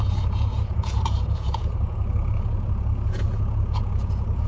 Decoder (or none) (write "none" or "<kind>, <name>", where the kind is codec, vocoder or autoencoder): vocoder, Vocos